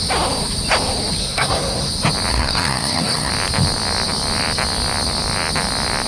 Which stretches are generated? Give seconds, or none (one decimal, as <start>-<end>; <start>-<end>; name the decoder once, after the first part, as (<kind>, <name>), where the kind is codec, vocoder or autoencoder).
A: 1.2-1.9 (codec, SNAC); 2.3-3.3